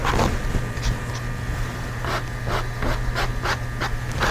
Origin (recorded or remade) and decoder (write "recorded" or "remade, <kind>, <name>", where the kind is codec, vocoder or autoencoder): recorded